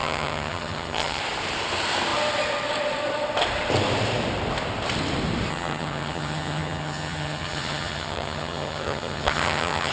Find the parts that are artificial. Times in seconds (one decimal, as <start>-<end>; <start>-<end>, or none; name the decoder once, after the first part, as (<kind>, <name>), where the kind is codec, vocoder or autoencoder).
0.0-1.2 (vocoder, HiFi-GAN); 5.5-9.9